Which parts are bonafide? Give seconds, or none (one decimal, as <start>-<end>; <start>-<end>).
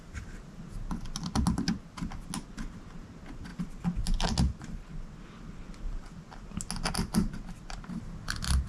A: 0.0-8.7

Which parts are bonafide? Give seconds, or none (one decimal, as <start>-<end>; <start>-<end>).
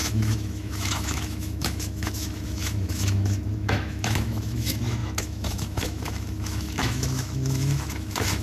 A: none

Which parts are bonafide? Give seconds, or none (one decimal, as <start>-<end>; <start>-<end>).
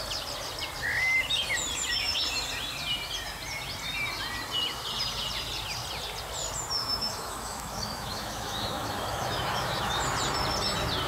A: 0.0-6.8; 10.0-11.1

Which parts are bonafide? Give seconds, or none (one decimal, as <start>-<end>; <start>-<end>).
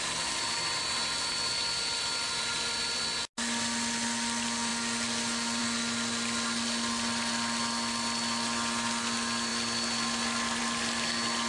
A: 0.0-11.5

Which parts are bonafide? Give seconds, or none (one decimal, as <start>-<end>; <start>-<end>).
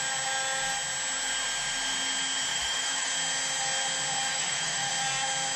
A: 0.0-2.5; 3.1-4.3; 4.9-5.6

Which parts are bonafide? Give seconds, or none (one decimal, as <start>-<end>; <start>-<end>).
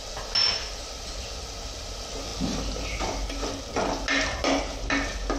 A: 0.0-5.4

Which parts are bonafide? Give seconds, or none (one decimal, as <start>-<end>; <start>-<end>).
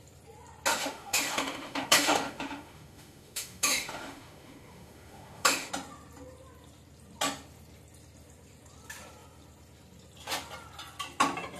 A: 0.0-0.7; 5.7-11.6